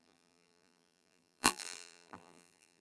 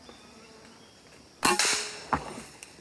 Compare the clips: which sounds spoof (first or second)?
first